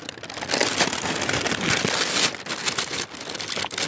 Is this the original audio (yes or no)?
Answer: yes